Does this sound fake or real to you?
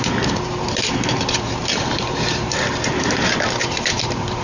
fake